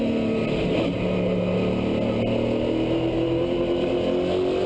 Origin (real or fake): real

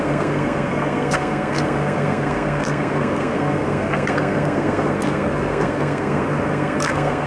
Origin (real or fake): fake